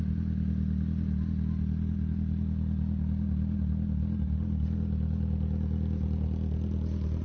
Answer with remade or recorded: recorded